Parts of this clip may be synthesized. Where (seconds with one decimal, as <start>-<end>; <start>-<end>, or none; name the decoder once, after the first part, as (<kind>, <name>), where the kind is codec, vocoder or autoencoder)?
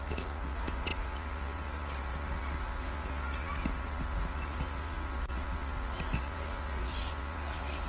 0.0-7.9 (vocoder, Vocos)